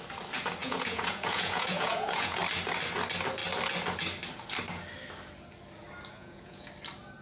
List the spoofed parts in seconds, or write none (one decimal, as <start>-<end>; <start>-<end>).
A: 0.6-2.4; 6.2-6.7